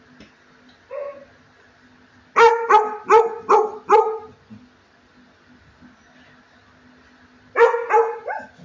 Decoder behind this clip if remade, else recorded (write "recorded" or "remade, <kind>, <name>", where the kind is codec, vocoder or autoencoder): recorded